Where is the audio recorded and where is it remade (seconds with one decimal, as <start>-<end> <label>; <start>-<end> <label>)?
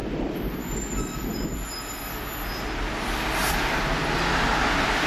0.0-5.1 recorded